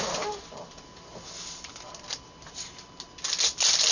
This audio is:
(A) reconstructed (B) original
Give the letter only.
B